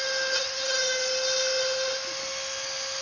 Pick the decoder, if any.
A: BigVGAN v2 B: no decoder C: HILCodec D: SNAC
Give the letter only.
B